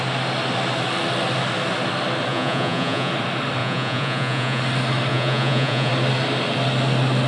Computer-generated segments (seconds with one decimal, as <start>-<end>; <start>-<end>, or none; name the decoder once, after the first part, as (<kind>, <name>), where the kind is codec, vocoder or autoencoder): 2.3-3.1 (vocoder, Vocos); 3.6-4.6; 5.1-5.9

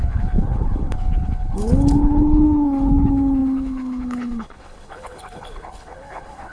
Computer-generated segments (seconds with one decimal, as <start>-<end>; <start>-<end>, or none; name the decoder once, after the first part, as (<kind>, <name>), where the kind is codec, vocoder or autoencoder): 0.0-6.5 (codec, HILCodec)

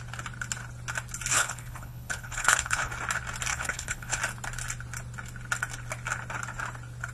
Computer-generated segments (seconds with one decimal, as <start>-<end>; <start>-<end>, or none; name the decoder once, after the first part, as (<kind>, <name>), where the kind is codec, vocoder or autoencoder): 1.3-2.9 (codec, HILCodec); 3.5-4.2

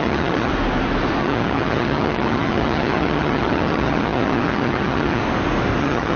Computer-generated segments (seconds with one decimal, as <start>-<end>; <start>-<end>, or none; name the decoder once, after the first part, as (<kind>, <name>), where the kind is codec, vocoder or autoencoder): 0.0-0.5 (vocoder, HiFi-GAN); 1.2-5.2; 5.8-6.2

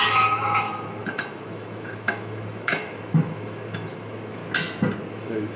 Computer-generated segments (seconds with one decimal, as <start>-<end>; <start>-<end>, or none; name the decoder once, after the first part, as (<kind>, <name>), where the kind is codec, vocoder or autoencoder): 0.0-4.4 (autoencoder, DAC-VAE); 5.1-5.6

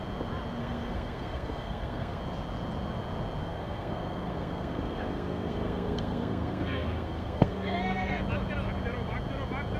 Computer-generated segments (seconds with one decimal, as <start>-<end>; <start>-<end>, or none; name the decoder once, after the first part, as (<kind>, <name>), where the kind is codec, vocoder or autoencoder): 0.6-2.2 (codec, SNAC); 3.4-8.2